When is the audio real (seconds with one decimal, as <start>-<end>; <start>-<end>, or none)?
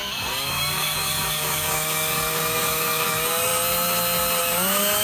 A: 3.5-4.4